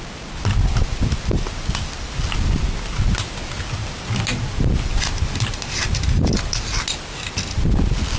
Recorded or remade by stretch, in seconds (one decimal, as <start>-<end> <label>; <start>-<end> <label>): 0.0-8.2 recorded